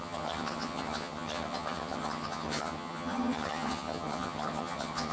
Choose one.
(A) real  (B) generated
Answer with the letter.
B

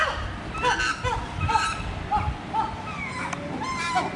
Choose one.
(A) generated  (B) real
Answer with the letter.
B